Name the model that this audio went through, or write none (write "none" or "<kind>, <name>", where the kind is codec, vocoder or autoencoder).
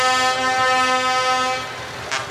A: none